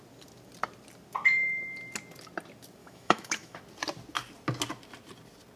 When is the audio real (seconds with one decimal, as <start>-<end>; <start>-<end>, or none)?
0.0-2.8; 3.6-5.6